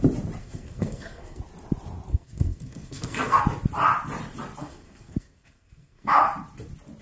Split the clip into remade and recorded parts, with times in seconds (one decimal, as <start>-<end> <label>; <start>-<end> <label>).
0.0-0.4 recorded; 0.4-1.4 remade; 1.4-2.1 recorded; 2.1-3.4 remade; 3.4-4.6 recorded; 4.6-6.2 remade; 6.2-7.0 recorded